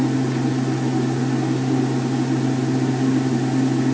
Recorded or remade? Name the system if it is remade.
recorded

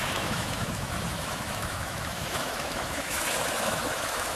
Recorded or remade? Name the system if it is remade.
remade, autoencoder, DAC-VAE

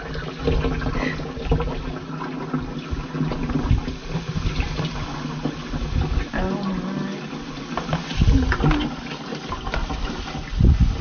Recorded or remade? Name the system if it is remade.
recorded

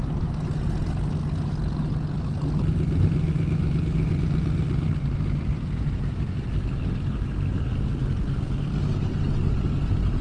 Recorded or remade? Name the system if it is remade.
recorded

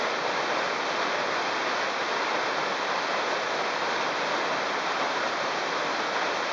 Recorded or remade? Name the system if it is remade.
recorded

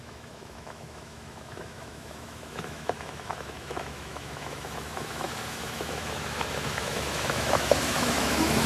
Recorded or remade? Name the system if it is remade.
remade, autoencoder, DAC-VAE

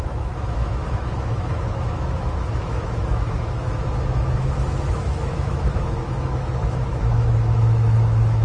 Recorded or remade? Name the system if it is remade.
remade, autoencoder, DAC-VAE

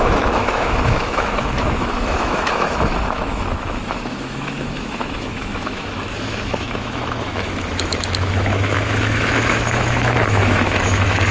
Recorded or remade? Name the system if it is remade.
remade, autoencoder, DAC-VAE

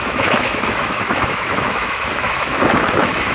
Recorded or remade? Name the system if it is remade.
remade, autoencoder, DAC-VAE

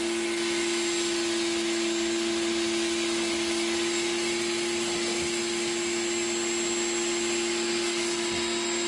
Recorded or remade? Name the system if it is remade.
recorded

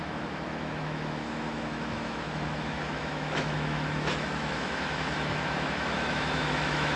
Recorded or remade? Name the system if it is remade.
remade, autoencoder, DAC-VAE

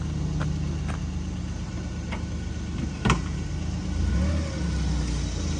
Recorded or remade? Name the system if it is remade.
recorded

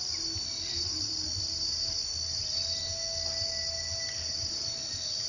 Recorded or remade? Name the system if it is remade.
recorded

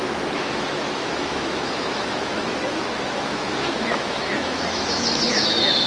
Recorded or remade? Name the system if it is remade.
remade, autoencoder, DAC-VAE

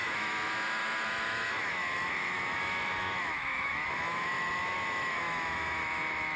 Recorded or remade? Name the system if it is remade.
remade, autoencoder, DAC-VAE